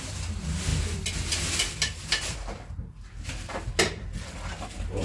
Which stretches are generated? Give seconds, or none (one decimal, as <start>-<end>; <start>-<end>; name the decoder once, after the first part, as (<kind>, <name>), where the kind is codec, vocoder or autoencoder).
none